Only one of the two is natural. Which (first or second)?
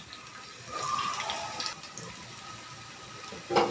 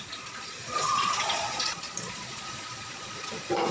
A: first